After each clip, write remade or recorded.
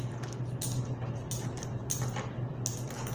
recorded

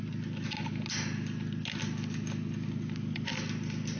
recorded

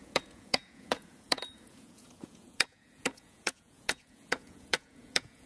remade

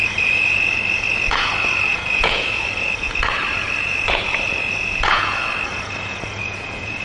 remade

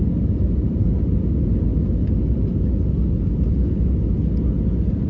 recorded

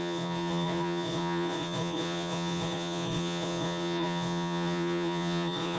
remade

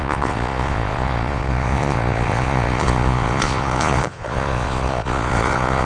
remade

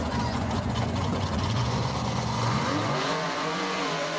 remade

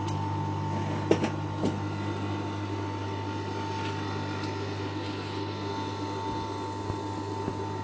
recorded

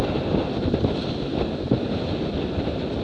recorded